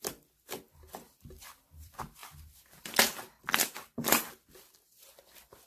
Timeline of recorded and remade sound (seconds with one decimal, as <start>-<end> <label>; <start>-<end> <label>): 0.0-5.7 remade